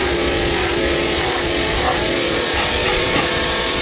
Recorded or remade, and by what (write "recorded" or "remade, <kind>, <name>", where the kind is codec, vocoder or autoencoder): remade, vocoder, Vocos